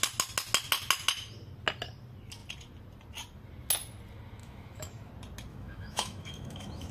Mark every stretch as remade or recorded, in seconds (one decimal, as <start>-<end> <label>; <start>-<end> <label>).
0.0-4.4 recorded; 4.4-5.1 remade; 5.1-5.5 recorded; 5.5-6.9 remade